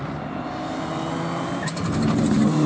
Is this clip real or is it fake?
real